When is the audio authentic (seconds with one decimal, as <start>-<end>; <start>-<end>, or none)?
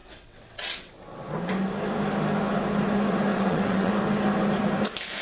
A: 0.9-3.3; 3.9-5.2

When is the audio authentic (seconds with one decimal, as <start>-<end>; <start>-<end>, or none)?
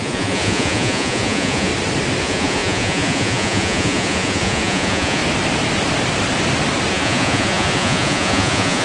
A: 1.7-2.2; 5.2-6.9